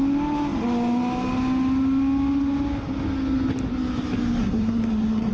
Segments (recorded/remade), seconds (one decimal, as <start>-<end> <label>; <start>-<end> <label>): 0.0-4.4 recorded; 4.4-5.3 remade